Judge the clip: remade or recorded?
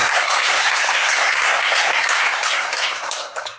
remade